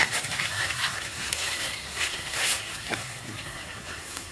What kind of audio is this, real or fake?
fake